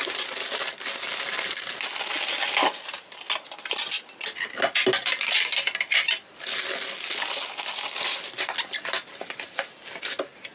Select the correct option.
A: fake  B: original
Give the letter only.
B